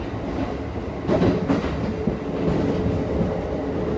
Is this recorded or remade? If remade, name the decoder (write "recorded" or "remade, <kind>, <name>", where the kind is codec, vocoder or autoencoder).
recorded